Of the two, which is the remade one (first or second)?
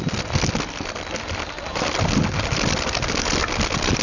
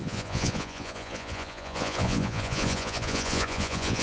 second